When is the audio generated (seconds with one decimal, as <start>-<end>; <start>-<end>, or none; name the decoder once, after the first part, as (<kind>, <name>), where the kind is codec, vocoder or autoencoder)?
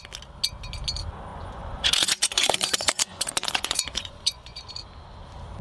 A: 1.3-4.7 (vocoder, Vocos)